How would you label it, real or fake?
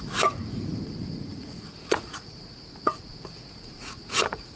fake